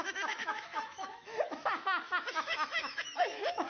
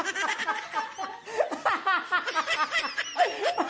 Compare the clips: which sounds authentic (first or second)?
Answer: second